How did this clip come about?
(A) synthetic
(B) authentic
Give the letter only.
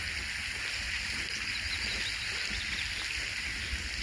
B